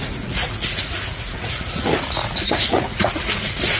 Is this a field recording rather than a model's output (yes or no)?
no